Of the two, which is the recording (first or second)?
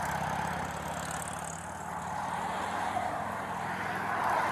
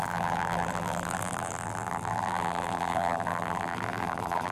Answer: first